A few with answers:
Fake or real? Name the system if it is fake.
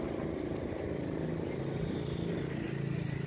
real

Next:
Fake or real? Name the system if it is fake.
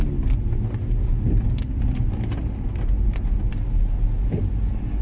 real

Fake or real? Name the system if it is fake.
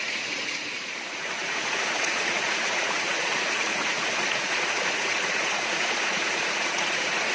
fake, vocoder, Vocos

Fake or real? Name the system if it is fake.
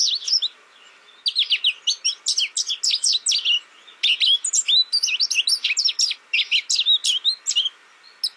real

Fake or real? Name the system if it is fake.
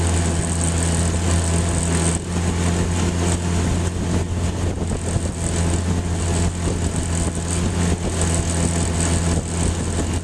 real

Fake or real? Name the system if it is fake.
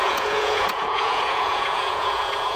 fake, vocoder, Vocos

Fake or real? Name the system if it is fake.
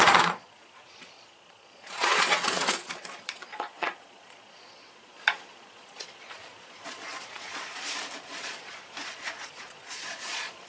fake, vocoder, Vocos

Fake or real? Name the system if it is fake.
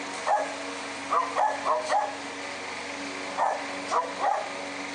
real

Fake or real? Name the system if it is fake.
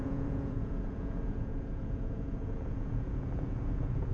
fake, vocoder, Vocos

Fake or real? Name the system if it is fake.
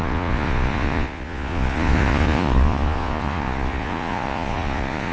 fake, vocoder, Vocos